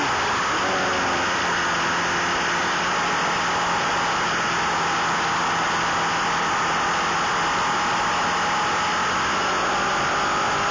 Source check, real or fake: real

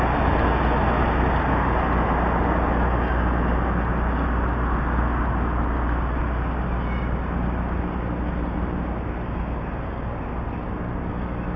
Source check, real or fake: real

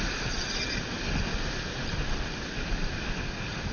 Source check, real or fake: real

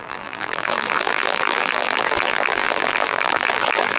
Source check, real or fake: fake